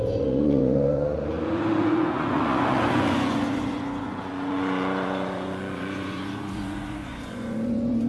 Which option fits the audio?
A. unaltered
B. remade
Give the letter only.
B